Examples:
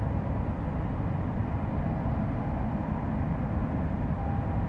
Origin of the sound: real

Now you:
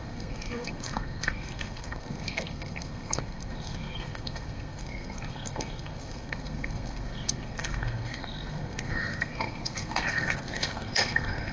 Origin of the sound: fake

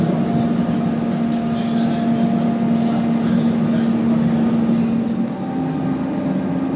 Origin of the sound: real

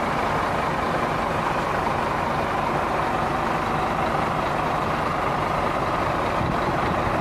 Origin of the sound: fake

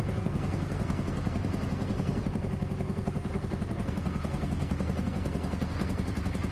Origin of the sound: fake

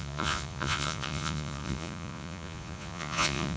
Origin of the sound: fake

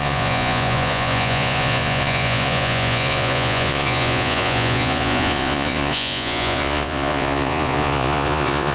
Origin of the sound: fake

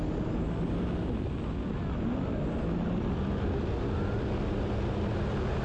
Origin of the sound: real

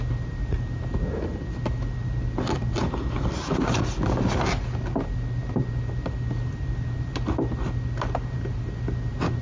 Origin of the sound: real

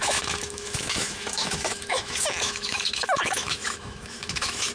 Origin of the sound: fake